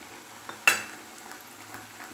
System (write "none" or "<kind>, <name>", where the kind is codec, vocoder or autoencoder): none